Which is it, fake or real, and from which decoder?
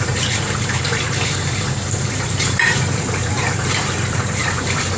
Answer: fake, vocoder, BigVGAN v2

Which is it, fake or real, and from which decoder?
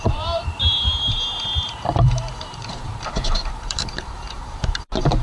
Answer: fake, vocoder, BigVGAN v2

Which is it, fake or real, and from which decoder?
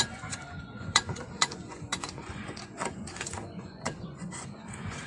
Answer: fake, vocoder, Vocos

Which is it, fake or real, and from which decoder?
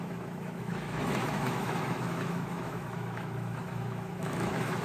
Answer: fake, autoencoder, DAC-VAE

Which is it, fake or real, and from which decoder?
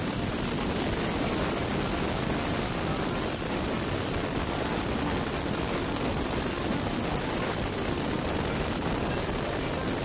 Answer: real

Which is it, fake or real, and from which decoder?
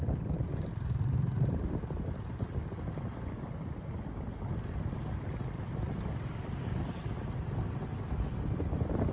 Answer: real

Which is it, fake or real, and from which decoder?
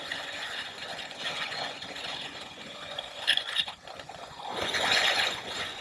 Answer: fake, vocoder, Vocos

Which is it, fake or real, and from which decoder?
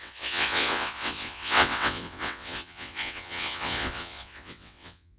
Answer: fake, vocoder, WaveNeXt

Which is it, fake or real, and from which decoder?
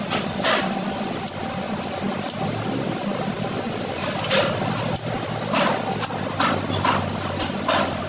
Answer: real